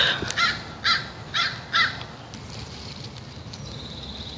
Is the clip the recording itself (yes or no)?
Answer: yes